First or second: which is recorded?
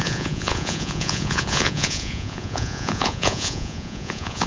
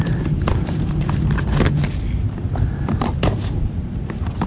second